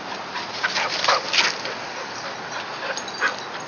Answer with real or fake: real